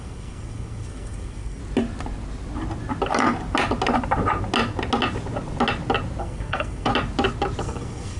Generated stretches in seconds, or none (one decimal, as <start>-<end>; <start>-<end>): 0.0-1.6; 6.2-6.9; 7.6-8.2